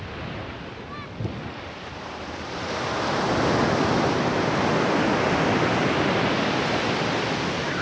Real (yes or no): yes